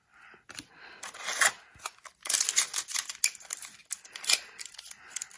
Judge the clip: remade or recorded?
recorded